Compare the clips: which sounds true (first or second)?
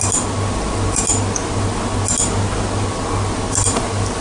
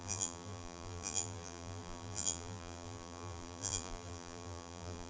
first